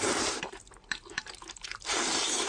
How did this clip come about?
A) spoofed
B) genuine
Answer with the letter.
A